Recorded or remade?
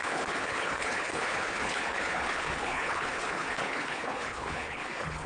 remade